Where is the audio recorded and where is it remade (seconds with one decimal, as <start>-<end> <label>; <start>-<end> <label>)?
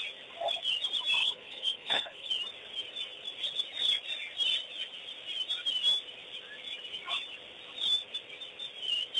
0.0-1.2 recorded; 1.2-2.3 remade; 2.3-9.2 recorded